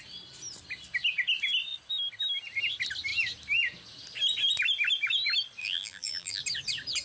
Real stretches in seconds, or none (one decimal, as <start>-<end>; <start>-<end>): 0.0-5.6; 6.4-7.0